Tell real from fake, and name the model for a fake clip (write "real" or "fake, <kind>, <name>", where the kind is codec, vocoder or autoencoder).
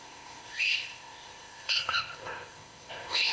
fake, codec, ZipCodec